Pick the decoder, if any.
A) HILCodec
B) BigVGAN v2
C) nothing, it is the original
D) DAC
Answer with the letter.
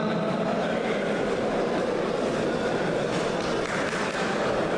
C